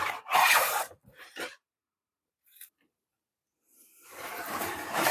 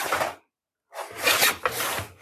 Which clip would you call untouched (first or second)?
second